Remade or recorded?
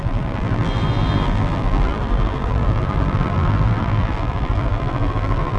remade